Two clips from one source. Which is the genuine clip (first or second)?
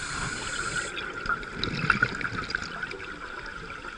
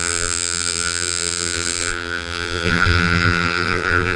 first